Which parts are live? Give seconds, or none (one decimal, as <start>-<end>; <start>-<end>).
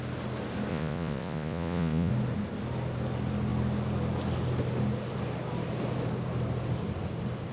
0.0-0.7; 2.1-7.5